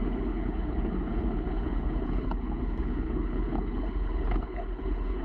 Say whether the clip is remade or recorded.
remade